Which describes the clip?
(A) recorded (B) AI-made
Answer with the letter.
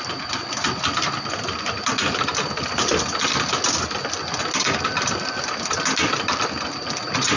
A